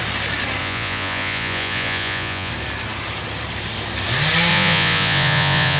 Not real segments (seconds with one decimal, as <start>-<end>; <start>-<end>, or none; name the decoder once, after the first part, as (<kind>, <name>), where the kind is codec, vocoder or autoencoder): 0.6-2.5 (vocoder, Vocos); 4.5-5.8